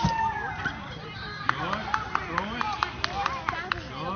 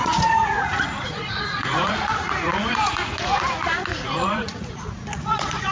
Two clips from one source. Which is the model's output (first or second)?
second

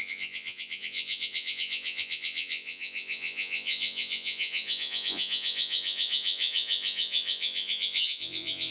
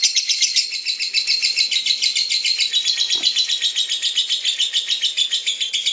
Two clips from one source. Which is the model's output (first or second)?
first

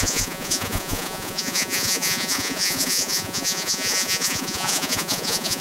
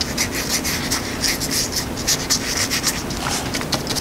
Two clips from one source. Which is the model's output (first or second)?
first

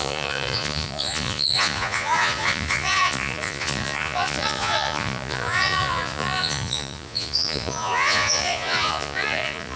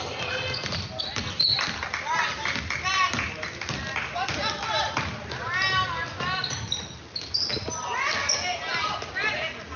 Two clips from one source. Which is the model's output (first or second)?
first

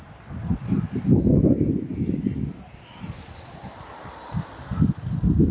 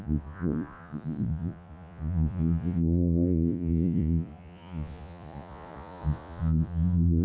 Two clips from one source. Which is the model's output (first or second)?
second